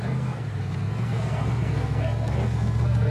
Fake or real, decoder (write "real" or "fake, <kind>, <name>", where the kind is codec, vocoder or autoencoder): fake, codec, SNAC